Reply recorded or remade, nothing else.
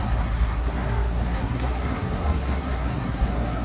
remade